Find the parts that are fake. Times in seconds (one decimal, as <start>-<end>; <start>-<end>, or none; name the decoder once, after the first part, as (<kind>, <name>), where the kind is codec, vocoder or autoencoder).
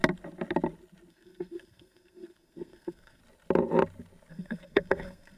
1.1-3.2 (codec, SNAC); 4.3-5.4